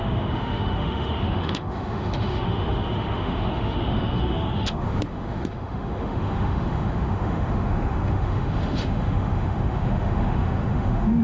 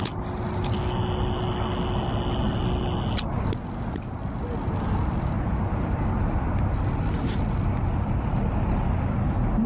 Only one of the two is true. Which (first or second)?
second